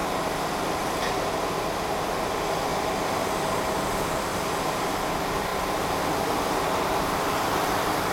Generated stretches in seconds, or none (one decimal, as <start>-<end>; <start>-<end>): 4.3-4.9